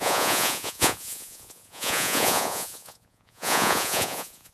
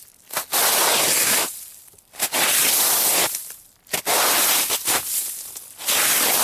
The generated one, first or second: first